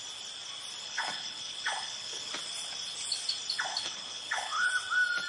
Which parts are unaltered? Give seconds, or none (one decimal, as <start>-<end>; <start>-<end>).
0.0-0.8; 2.3-3.7; 4.7-5.3